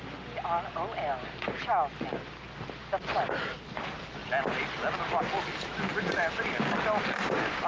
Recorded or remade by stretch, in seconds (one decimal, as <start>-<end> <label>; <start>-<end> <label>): 0.0-7.7 recorded